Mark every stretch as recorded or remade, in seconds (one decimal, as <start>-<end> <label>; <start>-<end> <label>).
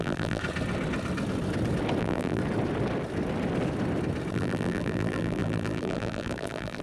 0.0-0.4 remade; 0.4-2.0 recorded; 2.0-2.4 remade; 2.4-4.3 recorded; 4.3-6.8 remade